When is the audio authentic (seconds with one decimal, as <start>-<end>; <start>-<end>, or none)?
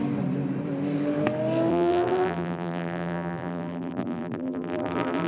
0.0-1.7